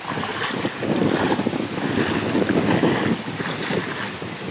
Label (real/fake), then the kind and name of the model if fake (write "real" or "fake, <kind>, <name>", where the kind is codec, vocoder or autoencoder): real